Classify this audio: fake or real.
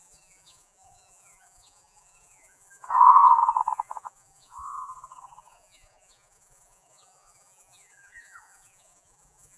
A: fake